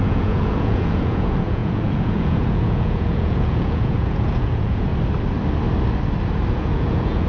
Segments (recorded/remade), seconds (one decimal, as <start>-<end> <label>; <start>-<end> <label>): 0.0-4.9 remade; 4.9-6.5 recorded; 6.5-7.3 remade